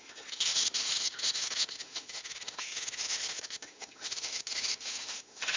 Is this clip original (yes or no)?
no